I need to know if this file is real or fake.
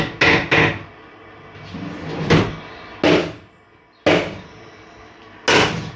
real